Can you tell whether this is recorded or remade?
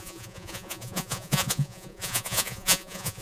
remade